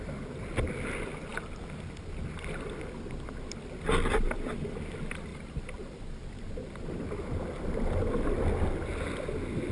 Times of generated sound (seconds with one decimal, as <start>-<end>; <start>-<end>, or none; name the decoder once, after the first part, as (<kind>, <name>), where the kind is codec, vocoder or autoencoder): 5.3-6.3 (vocoder, BigVGAN v2)